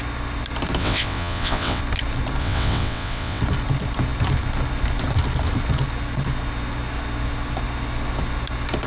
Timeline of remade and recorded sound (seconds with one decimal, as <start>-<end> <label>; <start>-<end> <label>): 0.0-0.8 recorded; 0.8-1.8 remade; 1.8-2.4 recorded; 2.4-3.4 remade; 3.4-8.9 recorded